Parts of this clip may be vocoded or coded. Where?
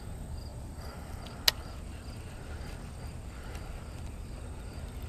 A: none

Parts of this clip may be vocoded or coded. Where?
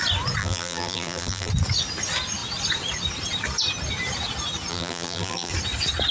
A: 0.4-1.5 (vocoder, BigVGAN v2); 4.7-5.5